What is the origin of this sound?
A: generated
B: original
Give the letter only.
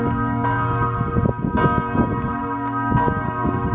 B